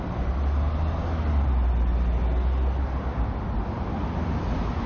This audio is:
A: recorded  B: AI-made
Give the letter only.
A